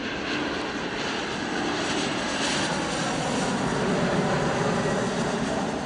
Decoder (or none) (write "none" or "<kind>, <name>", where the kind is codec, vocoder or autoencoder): none